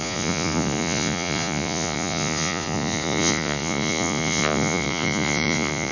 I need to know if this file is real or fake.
fake